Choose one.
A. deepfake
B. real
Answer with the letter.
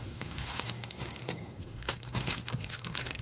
A